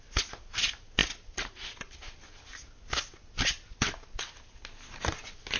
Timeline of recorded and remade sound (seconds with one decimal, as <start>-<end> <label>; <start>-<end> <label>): 0.0-1.0 recorded; 1.0-2.6 remade; 2.6-3.7 recorded; 3.7-4.6 remade; 4.6-5.6 recorded